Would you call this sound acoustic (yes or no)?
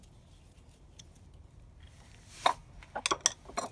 yes